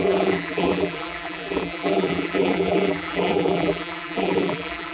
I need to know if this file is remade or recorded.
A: remade